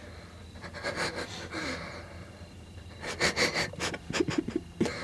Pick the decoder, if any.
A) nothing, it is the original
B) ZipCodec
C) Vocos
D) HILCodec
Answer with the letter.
A